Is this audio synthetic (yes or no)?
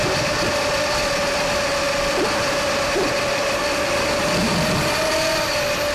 no